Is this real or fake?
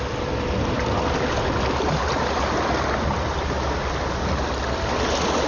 real